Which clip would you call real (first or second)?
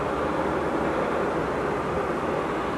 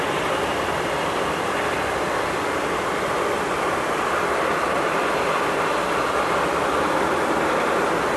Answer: first